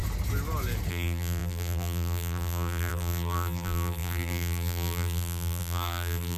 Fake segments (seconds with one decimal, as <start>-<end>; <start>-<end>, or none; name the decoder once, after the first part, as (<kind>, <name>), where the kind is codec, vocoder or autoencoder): 0.9-6.4 (vocoder, BigVGAN v2)